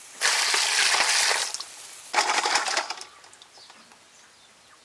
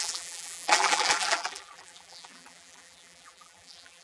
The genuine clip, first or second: first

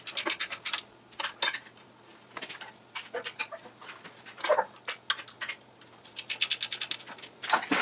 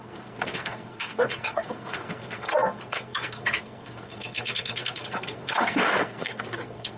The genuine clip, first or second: first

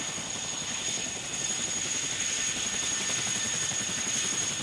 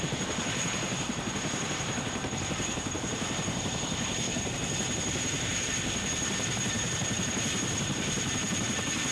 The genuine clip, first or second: first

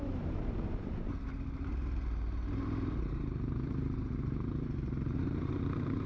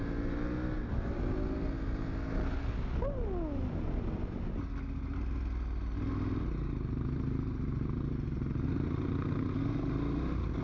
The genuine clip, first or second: second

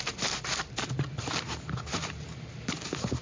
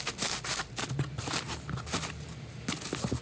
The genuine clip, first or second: second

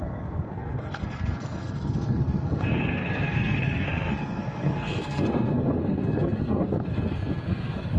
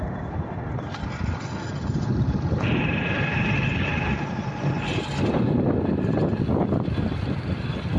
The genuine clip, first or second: second